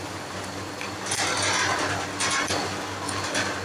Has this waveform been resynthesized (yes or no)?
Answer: no